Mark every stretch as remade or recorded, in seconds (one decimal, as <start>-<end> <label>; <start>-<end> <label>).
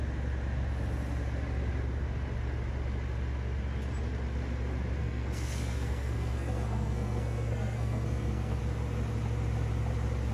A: 0.0-5.0 recorded; 5.0-8.6 remade; 8.6-10.3 recorded